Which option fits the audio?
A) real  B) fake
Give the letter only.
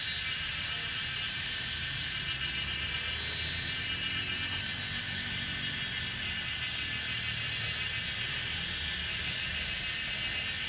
A